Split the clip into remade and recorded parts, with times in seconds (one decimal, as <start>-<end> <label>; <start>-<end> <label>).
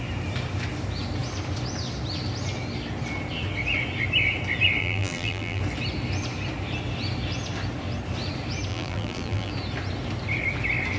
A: 0.0-4.8 recorded; 4.8-5.6 remade; 5.6-8.7 recorded; 8.7-9.5 remade; 9.5-11.0 recorded